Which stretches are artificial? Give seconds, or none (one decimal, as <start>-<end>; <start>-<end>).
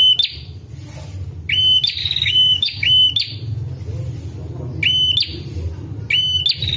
2.0-2.9